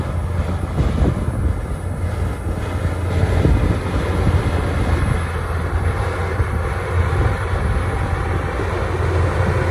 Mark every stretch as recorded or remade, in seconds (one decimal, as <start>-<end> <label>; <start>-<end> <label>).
0.0-6.2 recorded; 6.2-7.1 remade; 7.1-9.7 recorded